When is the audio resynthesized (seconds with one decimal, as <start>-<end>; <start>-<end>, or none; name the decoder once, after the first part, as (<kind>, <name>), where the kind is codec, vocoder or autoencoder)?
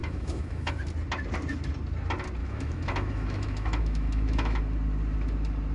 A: 0.0-0.7 (autoencoder, DAC-VAE); 2.4-4.6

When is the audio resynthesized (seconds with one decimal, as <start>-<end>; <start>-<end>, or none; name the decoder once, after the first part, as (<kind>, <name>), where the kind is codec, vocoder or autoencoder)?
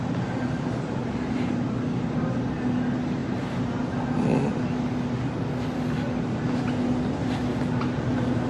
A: 1.0-1.8 (vocoder, BigVGAN v2); 3.2-3.9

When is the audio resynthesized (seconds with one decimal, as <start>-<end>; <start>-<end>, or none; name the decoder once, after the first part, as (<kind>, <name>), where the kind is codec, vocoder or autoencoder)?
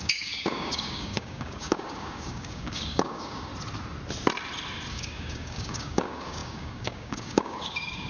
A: 0.0-3.5 (codec, DAC); 4.9-8.1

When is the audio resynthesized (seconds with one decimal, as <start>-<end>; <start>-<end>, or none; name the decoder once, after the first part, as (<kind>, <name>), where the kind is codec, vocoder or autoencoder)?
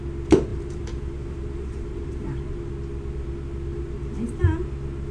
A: 0.5-2.7 (vocoder, BigVGAN v2); 3.7-4.4